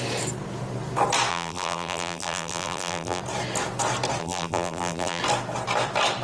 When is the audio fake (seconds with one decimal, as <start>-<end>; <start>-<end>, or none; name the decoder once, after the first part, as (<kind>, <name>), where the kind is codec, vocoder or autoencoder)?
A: 1.3-3.2 (vocoder, BigVGAN v2); 4.2-5.2